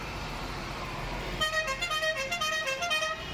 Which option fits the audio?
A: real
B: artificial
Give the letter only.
B